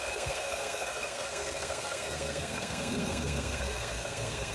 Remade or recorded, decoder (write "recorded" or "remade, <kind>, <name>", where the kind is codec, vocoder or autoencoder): remade, codec, SNAC